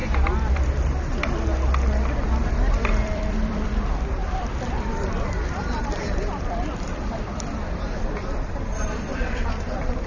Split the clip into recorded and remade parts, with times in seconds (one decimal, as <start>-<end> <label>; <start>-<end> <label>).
0.0-2.5 recorded; 2.5-4.2 remade; 4.2-5.1 recorded; 5.1-10.1 remade